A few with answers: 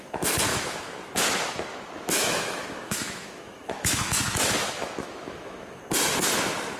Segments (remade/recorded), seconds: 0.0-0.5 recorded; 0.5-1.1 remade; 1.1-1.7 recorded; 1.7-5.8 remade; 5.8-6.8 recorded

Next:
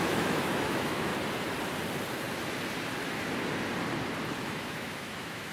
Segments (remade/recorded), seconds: 0.0-1.1 remade; 1.1-4.4 recorded; 4.4-5.5 remade

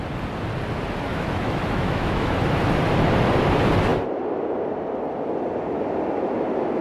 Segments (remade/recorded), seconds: 0.0-1.1 recorded; 1.1-2.4 remade; 2.4-6.8 recorded

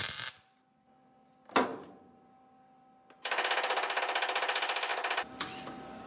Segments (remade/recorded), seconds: 0.0-6.1 recorded

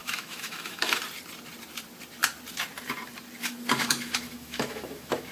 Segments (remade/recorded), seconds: 0.0-1.0 remade; 1.0-3.4 recorded; 3.4-5.3 remade